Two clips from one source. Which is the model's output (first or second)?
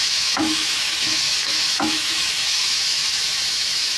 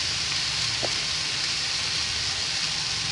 first